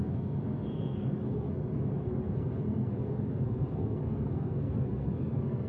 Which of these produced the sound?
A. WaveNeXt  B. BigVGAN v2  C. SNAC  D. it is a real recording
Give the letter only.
C